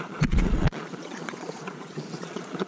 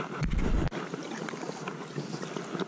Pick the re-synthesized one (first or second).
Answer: first